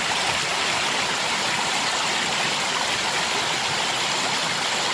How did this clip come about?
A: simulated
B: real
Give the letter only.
B